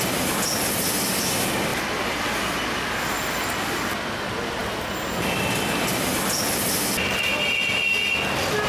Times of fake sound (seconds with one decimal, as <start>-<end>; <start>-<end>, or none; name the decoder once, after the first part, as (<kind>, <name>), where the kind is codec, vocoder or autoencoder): none